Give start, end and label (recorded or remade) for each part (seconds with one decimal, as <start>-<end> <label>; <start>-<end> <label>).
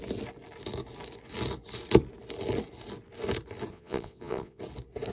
0.0-3.7 recorded; 3.7-4.6 remade; 4.6-5.1 recorded